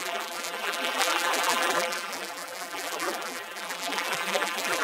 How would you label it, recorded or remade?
remade